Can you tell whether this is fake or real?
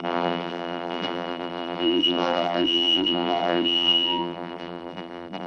fake